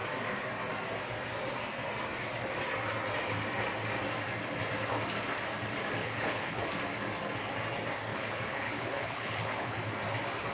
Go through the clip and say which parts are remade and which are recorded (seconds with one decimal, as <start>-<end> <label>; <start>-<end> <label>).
0.0-6.0 recorded; 6.0-6.7 remade; 6.7-8.1 recorded; 8.1-9.9 remade; 9.9-10.5 recorded